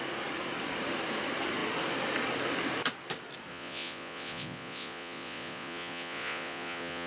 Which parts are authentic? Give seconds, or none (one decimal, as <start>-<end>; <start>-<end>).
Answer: 0.0-3.5